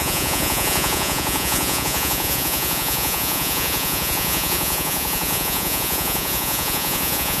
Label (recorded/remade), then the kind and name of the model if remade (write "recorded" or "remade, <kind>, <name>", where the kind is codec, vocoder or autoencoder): remade, vocoder, Vocos